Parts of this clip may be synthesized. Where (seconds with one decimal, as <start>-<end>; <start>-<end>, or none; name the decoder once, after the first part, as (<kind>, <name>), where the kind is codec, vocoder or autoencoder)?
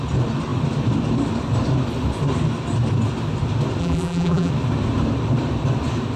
3.8-4.5 (vocoder, BigVGAN v2)